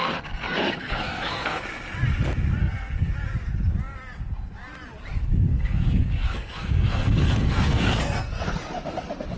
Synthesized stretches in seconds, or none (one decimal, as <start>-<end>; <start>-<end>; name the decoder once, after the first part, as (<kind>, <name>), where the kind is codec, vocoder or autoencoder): 0.0-1.6 (codec, SNAC); 2.6-3.1; 5.3-8.3